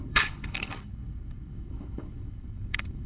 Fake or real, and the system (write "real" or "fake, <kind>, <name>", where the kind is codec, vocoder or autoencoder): fake, codec, HILCodec